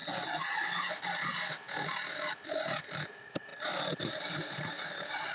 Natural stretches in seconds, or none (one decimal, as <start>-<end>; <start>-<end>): 0.0-2.8